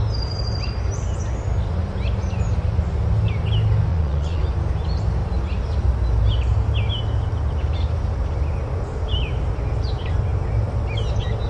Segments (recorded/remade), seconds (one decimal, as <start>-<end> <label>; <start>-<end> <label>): 0.0-3.9 recorded; 3.9-4.4 remade; 4.4-11.5 recorded